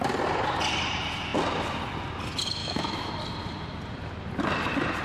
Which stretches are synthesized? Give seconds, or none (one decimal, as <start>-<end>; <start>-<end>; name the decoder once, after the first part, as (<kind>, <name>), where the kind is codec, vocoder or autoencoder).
2.6-3.1 (autoencoder, DAC-VAE)